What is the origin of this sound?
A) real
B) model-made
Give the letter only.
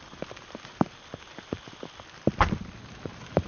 B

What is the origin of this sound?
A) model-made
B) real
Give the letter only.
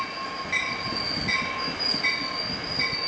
B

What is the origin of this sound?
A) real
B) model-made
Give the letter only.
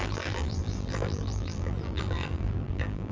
B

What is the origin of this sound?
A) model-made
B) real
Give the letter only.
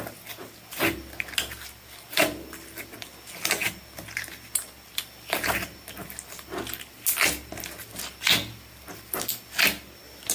B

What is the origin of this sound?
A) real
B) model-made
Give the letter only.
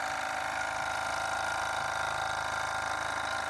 B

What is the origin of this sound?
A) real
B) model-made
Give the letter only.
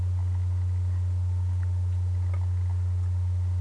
A